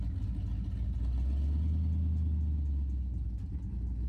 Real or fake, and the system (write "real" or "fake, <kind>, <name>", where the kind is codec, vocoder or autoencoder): real